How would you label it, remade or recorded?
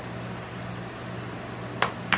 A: recorded